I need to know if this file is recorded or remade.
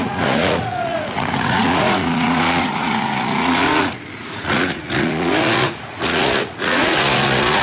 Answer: remade